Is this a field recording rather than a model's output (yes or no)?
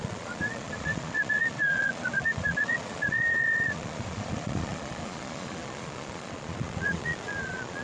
no